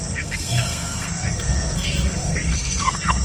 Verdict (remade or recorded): remade